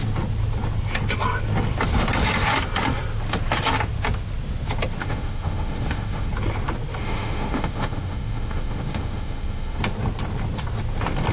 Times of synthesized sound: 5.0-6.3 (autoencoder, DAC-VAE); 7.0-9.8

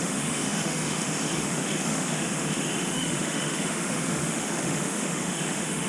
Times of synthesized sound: 0.0-5.9 (autoencoder, DAC-VAE)

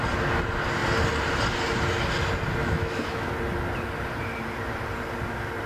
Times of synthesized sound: 2.6-3.3 (autoencoder, DAC-VAE)

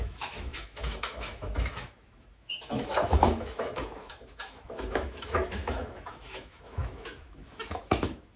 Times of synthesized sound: 0.0-8.4 (autoencoder, DAC-VAE)

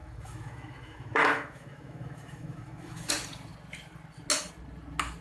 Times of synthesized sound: 0.0-3.1 (autoencoder, DAC-VAE)

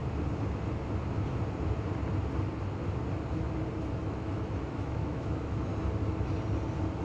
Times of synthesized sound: 4.0-5.7 (autoencoder, DAC-VAE)

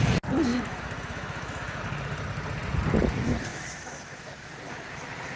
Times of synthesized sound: 0.5-1.8 (autoencoder, DAC-VAE); 3.5-4.5

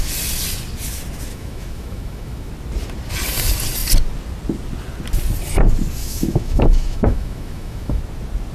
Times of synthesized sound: 1.3-2.5 (autoencoder, DAC-VAE); 6.0-8.0